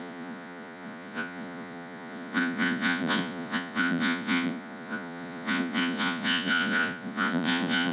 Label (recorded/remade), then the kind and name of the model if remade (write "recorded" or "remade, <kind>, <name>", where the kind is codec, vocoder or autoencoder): remade, vocoder, Vocos